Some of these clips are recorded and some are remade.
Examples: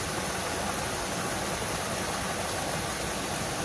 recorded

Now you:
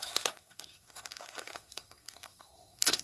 remade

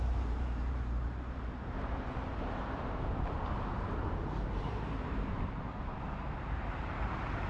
remade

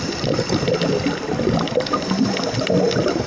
recorded